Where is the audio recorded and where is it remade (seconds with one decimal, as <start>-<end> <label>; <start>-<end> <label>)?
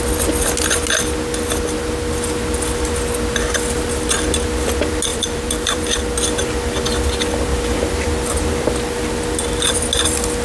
0.0-5.1 recorded; 5.1-6.0 remade; 6.0-7.5 recorded; 7.5-9.1 remade; 9.1-10.4 recorded